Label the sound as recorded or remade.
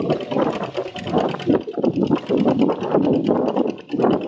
remade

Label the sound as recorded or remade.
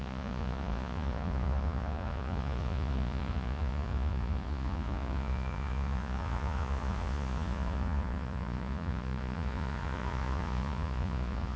remade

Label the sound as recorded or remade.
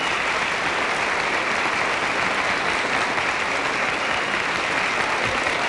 recorded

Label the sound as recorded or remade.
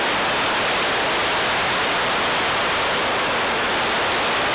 recorded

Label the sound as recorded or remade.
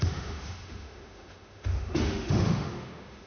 remade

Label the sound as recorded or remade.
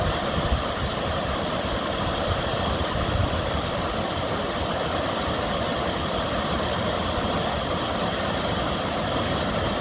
recorded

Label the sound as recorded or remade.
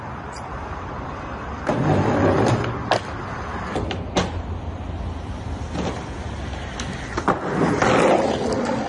recorded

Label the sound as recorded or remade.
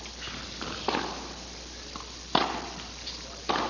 recorded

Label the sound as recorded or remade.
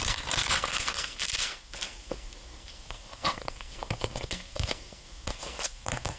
remade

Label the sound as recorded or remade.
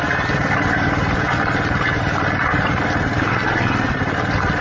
recorded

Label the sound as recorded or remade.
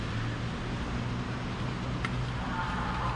recorded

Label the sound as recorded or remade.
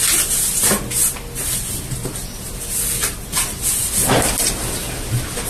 recorded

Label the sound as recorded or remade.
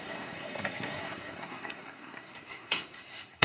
remade